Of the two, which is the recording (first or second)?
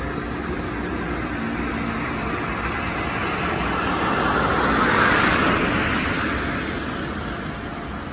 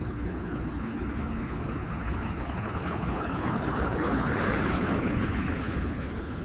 first